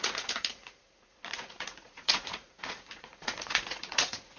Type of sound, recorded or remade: remade